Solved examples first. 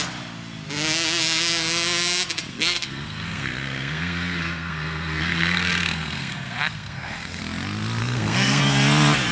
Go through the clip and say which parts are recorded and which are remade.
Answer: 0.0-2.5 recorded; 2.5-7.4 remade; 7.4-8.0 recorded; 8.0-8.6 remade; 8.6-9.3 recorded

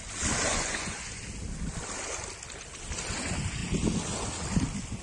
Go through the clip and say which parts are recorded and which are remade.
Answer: 0.0-0.5 recorded; 0.5-1.2 remade; 1.2-5.0 recorded